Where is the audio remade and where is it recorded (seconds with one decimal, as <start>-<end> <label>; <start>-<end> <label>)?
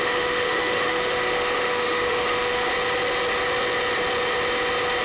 0.0-2.7 remade; 2.7-5.0 recorded